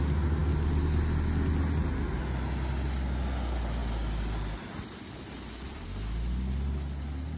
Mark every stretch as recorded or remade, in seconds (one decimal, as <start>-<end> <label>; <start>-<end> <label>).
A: 0.0-7.4 recorded